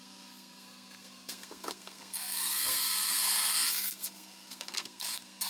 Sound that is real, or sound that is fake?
fake